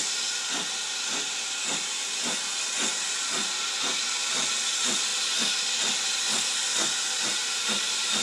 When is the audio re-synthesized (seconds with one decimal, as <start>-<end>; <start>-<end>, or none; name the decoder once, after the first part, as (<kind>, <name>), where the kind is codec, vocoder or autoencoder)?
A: none